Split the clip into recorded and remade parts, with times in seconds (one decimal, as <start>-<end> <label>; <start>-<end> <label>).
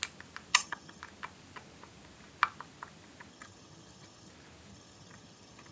0.0-0.5 recorded; 0.5-1.0 remade; 1.0-3.3 recorded; 3.3-4.3 remade; 4.3-4.7 recorded; 4.7-5.7 remade